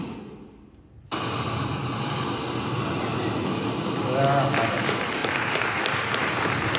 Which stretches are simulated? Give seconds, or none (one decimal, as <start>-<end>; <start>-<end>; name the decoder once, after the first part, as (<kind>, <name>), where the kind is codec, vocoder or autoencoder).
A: 5.2-6.8 (vocoder, BigVGAN v2)